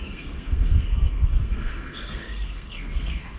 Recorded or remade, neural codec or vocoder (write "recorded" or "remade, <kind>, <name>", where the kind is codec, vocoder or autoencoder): remade, codec, SNAC